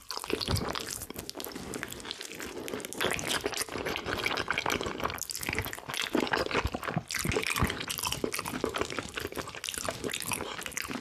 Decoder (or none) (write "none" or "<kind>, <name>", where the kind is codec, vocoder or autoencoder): none